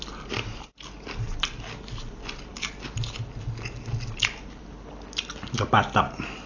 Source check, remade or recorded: recorded